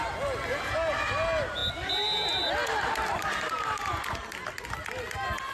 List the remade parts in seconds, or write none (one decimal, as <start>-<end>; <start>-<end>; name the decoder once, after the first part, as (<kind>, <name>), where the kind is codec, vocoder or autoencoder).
none